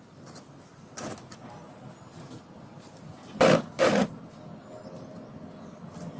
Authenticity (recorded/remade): recorded